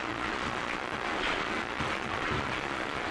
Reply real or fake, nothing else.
fake